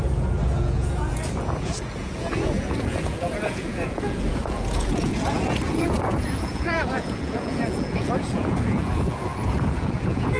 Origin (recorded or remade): remade